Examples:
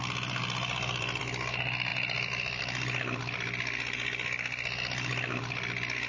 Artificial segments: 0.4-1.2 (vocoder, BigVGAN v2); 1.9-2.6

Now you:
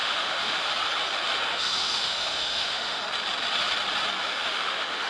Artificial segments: 0.0-0.7 (autoencoder, DAC-VAE); 1.5-3.0; 4.2-5.1

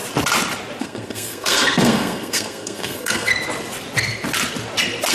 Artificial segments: 0.8-3.3 (codec, SNAC)

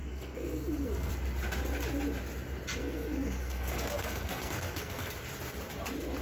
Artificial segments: 0.0-1.1 (codec, SNAC); 2.8-5.1

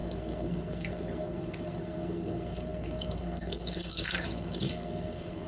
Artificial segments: 0.0-5.5 (codec, SNAC)